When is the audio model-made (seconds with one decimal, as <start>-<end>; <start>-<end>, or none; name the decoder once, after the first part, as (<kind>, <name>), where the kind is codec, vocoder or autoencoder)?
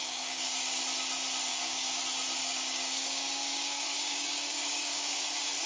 0.0-0.8 (codec, DAC); 1.5-2.0; 2.4-5.2